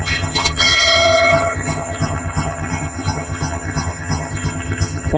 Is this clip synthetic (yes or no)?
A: yes